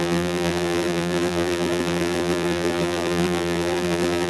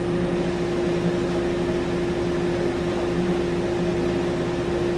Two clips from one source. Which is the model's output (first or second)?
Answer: first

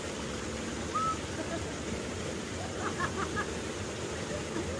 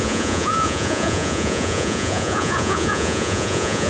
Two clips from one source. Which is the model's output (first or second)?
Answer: second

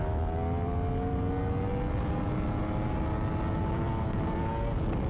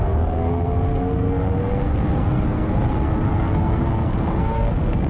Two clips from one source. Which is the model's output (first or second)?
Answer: second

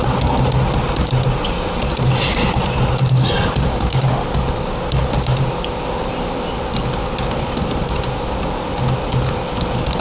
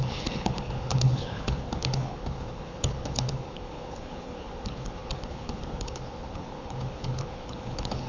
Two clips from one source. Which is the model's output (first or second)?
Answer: second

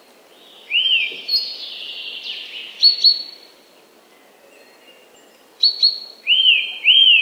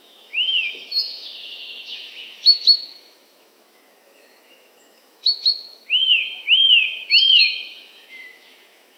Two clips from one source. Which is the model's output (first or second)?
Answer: second